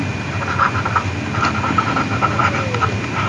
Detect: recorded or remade recorded